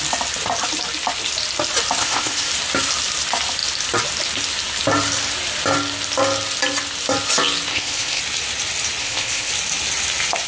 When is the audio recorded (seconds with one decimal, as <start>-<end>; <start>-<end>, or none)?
0.0-2.0; 2.5-7.7; 8.2-9.0; 9.5-10.5